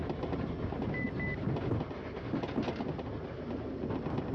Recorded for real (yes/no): yes